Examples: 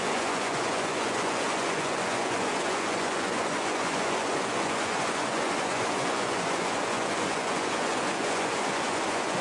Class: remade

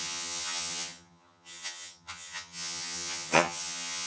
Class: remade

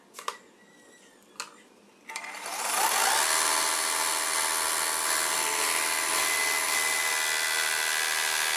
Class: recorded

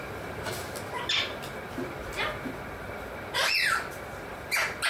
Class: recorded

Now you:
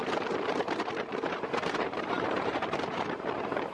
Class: remade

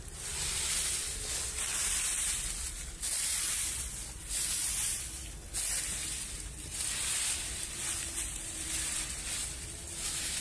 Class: recorded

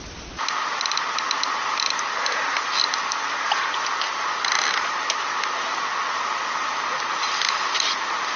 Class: recorded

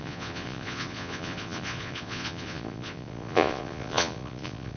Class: remade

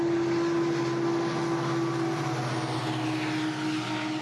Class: recorded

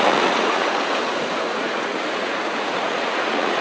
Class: remade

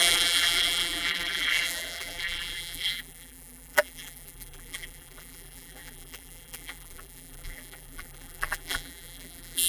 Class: remade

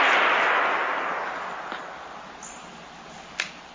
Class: recorded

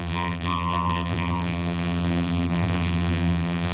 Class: remade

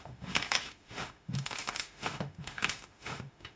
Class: remade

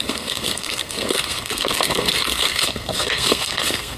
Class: remade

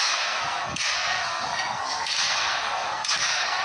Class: remade